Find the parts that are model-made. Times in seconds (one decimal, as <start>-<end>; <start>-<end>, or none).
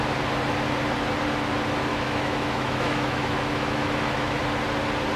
1.9-4.4